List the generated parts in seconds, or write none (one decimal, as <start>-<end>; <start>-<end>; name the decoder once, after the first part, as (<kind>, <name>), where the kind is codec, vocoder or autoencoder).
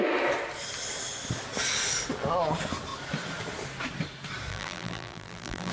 4.5-5.7 (vocoder, BigVGAN v2)